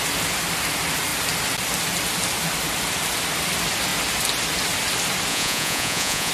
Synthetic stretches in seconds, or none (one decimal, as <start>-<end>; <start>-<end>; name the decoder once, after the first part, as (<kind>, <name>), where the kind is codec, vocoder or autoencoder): 5.3-6.3 (vocoder, Vocos)

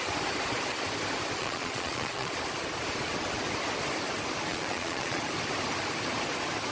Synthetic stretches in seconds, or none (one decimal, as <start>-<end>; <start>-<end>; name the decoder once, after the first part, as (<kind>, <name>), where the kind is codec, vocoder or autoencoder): 1.4-2.3 (vocoder, Vocos); 4.5-5.2

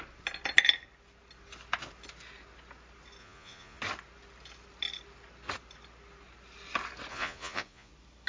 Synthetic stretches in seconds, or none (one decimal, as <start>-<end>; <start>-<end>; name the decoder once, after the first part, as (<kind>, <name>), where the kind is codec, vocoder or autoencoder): 3.2-3.8 (vocoder, Vocos); 7.1-7.9

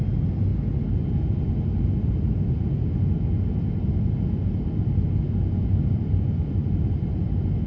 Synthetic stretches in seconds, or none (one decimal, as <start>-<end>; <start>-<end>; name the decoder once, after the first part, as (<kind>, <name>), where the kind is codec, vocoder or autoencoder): none

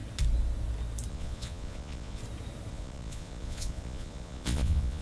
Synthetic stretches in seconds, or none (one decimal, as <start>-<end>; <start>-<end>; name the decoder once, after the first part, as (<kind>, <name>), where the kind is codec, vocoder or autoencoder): 1.1-2.2 (vocoder, Vocos); 2.7-5.0